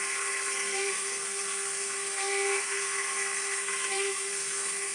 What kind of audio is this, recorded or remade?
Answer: remade